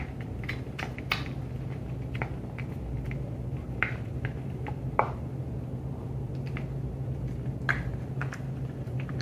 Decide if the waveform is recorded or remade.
recorded